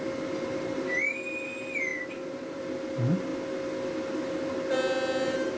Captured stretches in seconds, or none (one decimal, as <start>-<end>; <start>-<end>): 0.0-1.9; 2.6-5.6